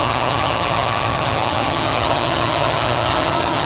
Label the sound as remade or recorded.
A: remade